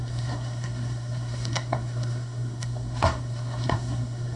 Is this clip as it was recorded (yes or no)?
no